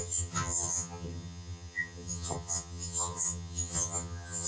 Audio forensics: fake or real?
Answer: fake